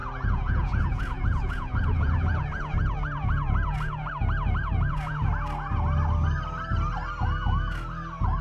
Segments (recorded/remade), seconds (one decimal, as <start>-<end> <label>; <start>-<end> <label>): 0.0-4.1 remade; 4.1-4.6 recorded; 4.6-5.3 remade; 5.3-8.4 recorded